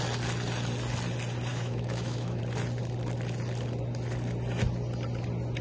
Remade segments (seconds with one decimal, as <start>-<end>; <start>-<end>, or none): 1.5-2.4